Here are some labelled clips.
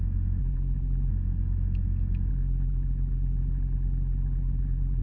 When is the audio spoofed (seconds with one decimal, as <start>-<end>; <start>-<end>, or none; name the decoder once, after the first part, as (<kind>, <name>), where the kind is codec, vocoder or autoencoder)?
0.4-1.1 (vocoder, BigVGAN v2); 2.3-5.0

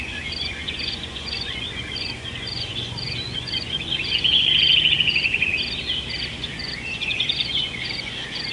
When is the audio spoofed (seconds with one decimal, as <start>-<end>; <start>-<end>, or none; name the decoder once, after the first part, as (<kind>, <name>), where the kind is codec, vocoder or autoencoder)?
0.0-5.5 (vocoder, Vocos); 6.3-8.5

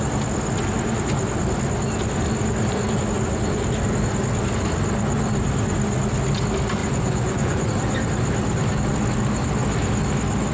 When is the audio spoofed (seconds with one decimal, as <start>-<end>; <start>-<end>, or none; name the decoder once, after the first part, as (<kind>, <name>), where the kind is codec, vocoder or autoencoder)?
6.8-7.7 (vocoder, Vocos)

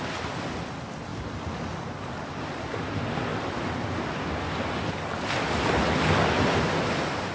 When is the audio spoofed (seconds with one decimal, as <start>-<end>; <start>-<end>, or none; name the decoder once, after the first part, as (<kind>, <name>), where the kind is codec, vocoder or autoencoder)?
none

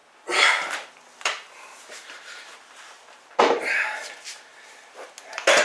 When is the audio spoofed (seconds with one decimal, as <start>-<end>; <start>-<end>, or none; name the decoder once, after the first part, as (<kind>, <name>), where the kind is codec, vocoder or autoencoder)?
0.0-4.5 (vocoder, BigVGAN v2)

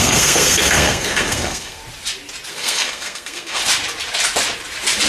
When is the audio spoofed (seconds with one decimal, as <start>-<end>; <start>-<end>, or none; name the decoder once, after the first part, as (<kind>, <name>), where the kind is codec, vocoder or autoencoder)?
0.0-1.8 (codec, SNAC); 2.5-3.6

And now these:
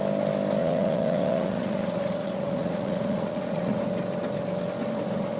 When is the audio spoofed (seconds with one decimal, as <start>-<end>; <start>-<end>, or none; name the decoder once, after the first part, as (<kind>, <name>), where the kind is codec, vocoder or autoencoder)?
0.6-3.8 (vocoder, Vocos)

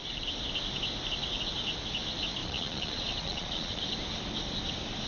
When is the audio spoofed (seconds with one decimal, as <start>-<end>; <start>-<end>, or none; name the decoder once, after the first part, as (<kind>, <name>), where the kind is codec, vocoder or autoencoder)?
2.4-3.8 (vocoder, Vocos)